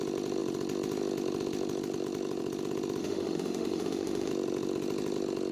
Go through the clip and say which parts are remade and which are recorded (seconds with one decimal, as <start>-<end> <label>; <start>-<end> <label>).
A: 0.0-3.0 recorded; 3.0-4.3 remade; 4.3-5.5 recorded

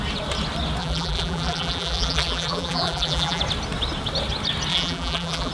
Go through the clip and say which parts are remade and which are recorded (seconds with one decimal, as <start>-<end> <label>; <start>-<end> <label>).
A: 0.0-0.8 recorded; 0.8-3.4 remade; 3.4-4.7 recorded; 4.7-5.5 remade

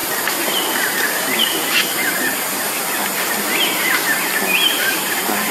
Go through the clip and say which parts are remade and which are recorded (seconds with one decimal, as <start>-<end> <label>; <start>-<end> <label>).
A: 0.0-5.5 recorded

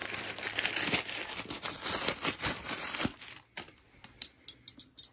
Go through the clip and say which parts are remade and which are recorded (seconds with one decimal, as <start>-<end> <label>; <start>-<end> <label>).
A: 0.0-5.1 recorded

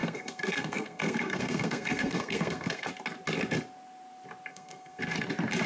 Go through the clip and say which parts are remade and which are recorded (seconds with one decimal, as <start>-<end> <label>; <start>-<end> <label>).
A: 0.0-2.9 remade; 2.9-4.5 recorded; 4.5-5.0 remade; 5.0-5.7 recorded